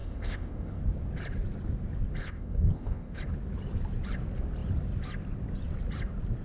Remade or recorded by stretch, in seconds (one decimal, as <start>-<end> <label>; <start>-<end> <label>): 0.0-0.8 remade; 0.8-2.2 recorded; 2.2-3.2 remade; 3.2-6.4 recorded